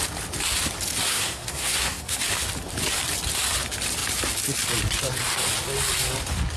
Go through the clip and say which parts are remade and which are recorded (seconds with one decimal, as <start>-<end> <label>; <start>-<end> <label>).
0.0-1.1 recorded; 1.1-2.2 remade; 2.2-6.6 recorded